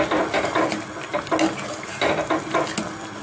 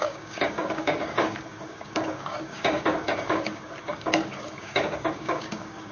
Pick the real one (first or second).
first